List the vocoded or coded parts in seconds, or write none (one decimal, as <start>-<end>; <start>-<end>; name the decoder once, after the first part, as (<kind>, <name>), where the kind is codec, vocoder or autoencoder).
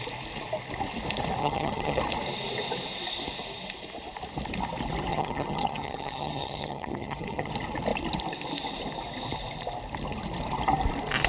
1.4-2.0 (vocoder, HiFi-GAN); 5.1-7.5